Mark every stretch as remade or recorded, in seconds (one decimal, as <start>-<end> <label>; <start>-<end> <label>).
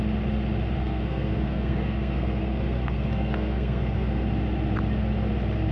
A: 0.0-0.8 recorded; 0.8-4.2 remade; 4.2-5.7 recorded